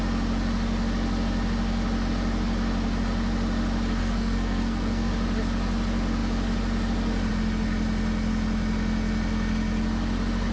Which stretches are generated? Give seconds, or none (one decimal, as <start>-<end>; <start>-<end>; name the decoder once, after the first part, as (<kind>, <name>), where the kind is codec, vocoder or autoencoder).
4.0-5.1 (codec, SNAC)